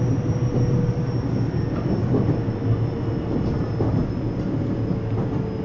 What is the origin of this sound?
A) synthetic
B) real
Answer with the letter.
B